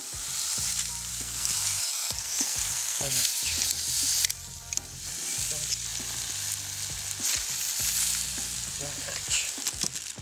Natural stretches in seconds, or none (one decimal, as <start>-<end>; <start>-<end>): 0.0-1.1; 3.3-10.2